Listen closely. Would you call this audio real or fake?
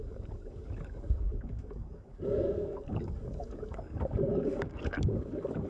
fake